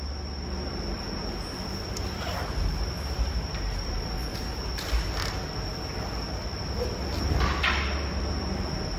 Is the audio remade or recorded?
recorded